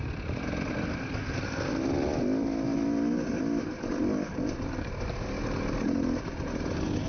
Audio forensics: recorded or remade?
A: recorded